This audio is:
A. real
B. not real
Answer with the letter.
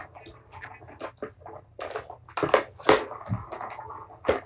A